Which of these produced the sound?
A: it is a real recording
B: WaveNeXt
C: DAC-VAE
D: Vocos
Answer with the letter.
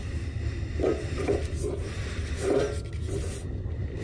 A